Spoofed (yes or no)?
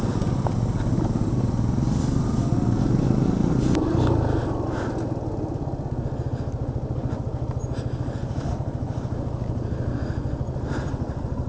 no